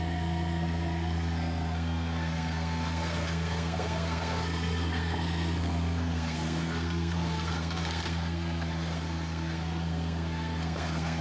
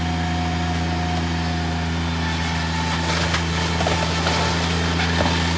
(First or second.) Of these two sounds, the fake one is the first